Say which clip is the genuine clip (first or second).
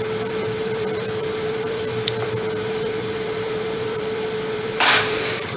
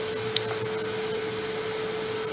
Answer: second